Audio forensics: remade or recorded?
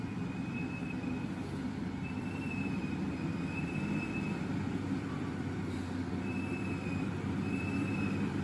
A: remade